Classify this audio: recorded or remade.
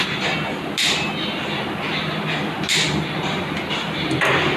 recorded